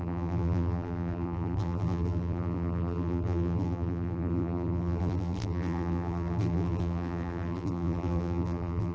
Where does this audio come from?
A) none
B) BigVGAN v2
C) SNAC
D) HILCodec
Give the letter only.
B